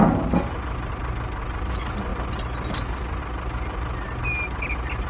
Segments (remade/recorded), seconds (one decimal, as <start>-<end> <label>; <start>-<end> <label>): 0.0-5.1 recorded